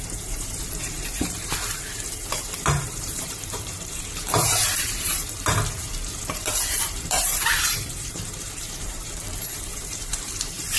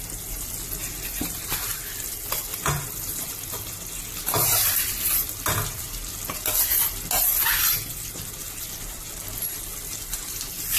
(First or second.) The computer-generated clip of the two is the first